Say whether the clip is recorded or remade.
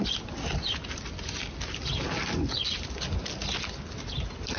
recorded